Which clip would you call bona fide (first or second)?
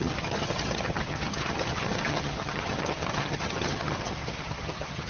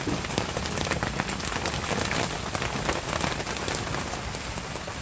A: second